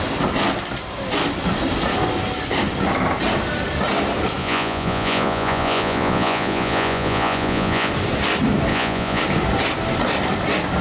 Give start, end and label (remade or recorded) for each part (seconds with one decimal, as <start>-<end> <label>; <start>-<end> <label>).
0.0-4.4 recorded; 4.4-7.9 remade; 7.9-8.7 recorded; 8.7-9.2 remade; 9.2-10.8 recorded